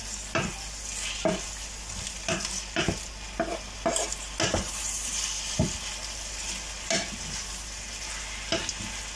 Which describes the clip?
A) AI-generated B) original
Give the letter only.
B